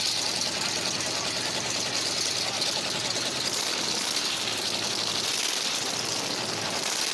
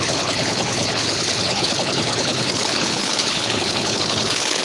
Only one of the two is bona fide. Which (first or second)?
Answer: first